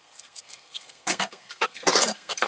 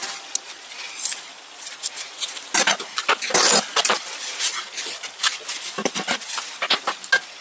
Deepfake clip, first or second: first